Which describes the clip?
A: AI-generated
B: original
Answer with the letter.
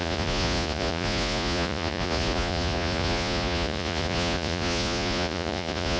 A